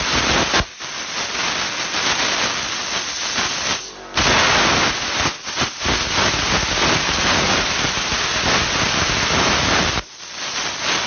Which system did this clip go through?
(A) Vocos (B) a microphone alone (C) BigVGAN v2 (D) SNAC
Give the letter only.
B